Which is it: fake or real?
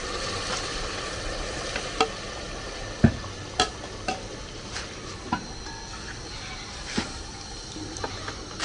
real